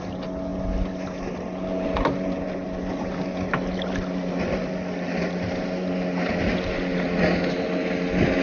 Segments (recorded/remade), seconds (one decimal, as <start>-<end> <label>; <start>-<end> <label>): 0.0-8.4 recorded